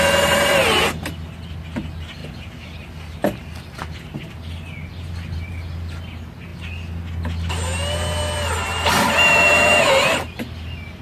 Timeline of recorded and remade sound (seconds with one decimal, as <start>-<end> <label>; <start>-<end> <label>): 0.0-11.0 recorded